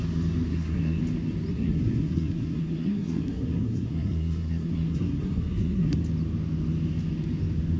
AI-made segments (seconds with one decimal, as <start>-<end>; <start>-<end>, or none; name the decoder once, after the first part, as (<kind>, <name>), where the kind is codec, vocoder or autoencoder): 0.5-1.0 (codec, SNAC); 1.5-6.0